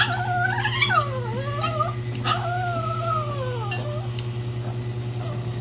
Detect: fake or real real